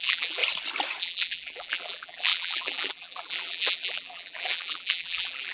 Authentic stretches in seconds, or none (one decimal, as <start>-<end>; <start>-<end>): 0.4-1.0